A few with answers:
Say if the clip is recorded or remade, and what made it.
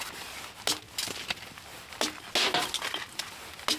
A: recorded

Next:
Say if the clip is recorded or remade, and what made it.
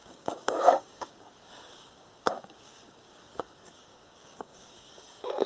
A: remade, codec, DAC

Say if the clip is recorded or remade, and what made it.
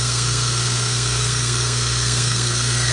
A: remade, codec, SNAC